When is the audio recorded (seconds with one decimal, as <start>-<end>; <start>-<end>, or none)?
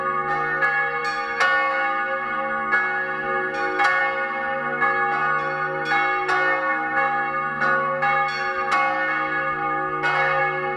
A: 0.0-10.8